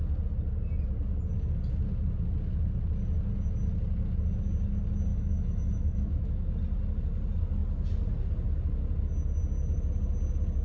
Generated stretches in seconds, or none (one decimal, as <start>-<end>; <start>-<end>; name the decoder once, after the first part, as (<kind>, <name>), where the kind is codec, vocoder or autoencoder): 5.1-6.5 (autoencoder, DAC-VAE)